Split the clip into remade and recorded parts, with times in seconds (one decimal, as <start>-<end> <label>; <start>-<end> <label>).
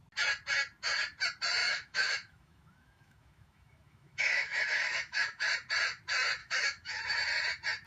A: 0.0-1.6 recorded; 1.6-5.5 remade; 5.5-6.4 recorded; 6.4-7.0 remade; 7.0-7.9 recorded